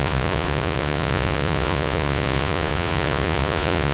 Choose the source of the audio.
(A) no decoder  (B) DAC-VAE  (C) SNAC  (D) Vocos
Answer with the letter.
D